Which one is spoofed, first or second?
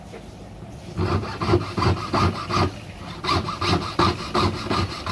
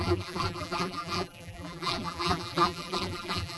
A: second